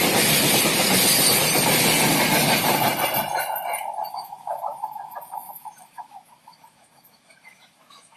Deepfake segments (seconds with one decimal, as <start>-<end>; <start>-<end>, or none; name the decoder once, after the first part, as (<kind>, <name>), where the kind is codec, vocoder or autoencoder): 4.1-8.2 (autoencoder, DAC-VAE)